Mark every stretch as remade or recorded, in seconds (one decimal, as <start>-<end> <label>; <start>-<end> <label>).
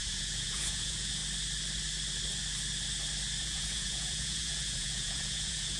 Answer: 0.0-1.2 remade; 1.2-3.4 recorded; 3.4-5.8 remade